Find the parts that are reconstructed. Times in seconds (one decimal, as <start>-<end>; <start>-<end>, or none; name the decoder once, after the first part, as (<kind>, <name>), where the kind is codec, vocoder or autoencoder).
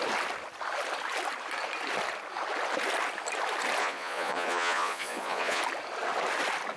3.8-5.6 (vocoder, Vocos)